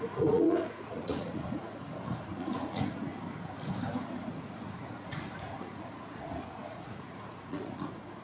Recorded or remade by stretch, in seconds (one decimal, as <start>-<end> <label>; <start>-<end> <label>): 0.0-3.1 remade; 3.1-4.2 recorded; 4.2-8.2 remade